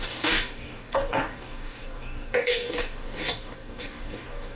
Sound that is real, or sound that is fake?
fake